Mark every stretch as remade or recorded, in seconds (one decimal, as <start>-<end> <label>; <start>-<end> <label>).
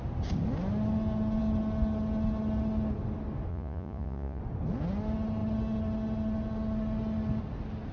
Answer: 0.0-3.5 recorded; 3.5-4.4 remade; 4.4-7.9 recorded